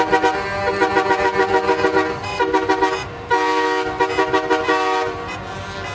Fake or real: real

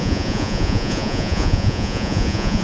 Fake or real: fake